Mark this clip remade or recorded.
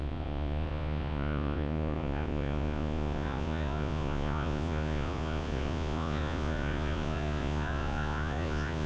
remade